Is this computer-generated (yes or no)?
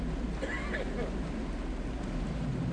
no